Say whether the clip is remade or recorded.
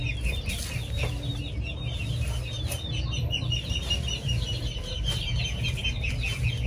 recorded